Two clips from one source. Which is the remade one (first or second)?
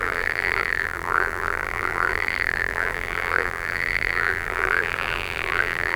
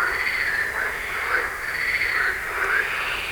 first